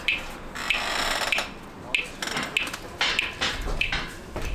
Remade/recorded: recorded